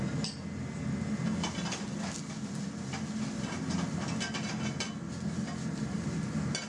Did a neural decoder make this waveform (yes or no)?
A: no